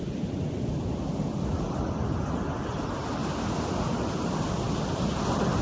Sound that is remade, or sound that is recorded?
recorded